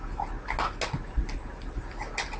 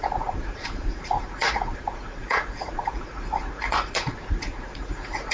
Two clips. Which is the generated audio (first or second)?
second